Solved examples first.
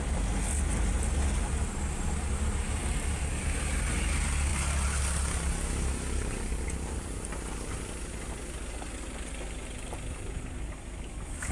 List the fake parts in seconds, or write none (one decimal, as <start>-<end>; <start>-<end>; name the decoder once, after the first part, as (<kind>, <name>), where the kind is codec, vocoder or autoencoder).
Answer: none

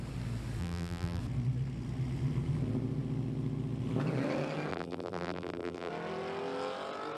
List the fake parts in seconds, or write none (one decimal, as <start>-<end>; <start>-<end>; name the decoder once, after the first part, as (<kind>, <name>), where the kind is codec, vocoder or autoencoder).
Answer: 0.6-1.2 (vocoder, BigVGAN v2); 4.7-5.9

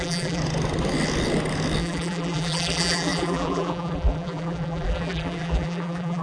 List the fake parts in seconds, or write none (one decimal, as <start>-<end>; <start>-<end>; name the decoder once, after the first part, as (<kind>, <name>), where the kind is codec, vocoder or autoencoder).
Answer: 0.0-0.4 (vocoder, BigVGAN v2); 1.8-6.2

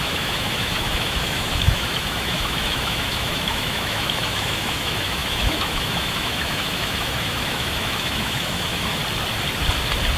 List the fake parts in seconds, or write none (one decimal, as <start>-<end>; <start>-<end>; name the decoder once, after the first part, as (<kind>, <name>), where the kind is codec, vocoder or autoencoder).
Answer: 0.0-9.0 (autoencoder, DAC-VAE)

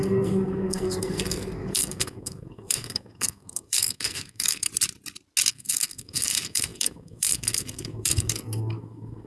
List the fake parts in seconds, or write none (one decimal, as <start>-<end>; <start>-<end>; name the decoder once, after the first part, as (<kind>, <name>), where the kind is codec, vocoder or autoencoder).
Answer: 0.0-4.7 (codec, SNAC); 5.5-9.3

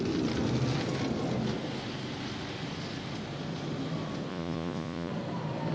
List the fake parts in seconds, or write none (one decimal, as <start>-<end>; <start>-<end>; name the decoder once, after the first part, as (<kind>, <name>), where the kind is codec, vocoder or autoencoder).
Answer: 4.3-5.1 (vocoder, Vocos)

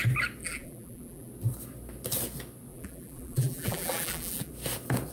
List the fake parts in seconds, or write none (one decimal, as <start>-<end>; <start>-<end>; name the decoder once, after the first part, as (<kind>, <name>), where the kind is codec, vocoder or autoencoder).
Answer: 0.4-1.3 (vocoder, BigVGAN v2); 2.7-4.5

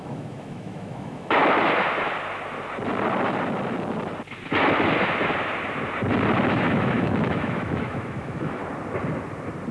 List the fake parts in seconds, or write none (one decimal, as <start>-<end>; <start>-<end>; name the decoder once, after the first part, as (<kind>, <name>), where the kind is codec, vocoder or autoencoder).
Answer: 0.0-1.4 (autoencoder, DAC-VAE); 6.5-8.6